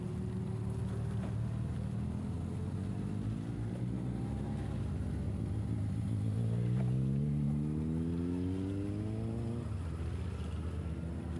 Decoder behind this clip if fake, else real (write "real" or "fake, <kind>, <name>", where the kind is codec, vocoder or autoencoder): real